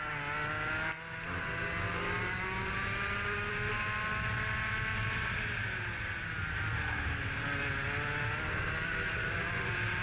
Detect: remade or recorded recorded